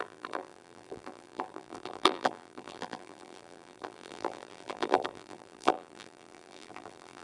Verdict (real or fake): fake